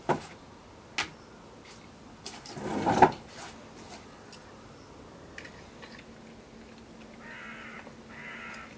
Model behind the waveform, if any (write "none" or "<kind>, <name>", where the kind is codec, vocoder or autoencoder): none